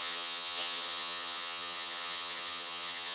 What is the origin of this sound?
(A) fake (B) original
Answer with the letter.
A